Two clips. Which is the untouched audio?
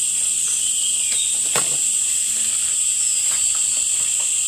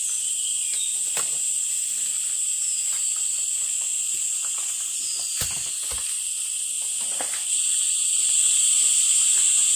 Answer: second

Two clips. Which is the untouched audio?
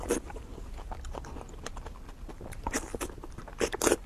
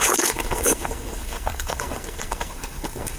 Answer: first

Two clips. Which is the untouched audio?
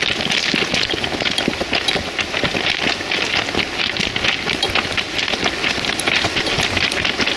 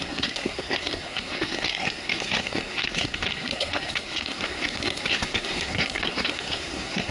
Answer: first